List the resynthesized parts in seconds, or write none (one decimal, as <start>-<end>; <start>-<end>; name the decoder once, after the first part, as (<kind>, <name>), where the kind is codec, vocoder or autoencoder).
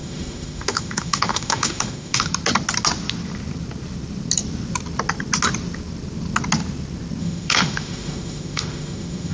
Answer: 0.0-2.3 (autoencoder, DAC-VAE); 7.2-9.3